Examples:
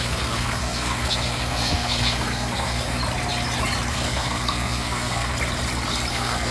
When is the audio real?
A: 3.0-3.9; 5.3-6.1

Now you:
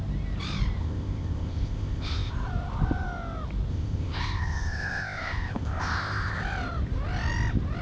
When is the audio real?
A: 0.0-0.8; 2.3-3.7; 6.4-7.8

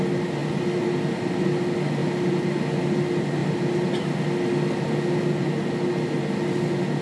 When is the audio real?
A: 0.0-7.0

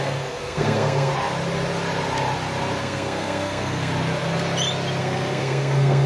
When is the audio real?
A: 1.1-2.8; 3.9-5.0

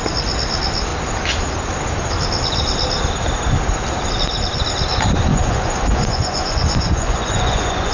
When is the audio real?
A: 0.0-5.3